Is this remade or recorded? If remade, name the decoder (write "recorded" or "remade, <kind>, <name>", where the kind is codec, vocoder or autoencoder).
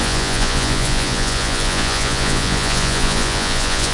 remade, vocoder, Vocos